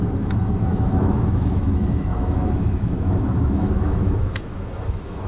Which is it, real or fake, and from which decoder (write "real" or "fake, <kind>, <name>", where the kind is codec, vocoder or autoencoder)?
fake, autoencoder, DAC-VAE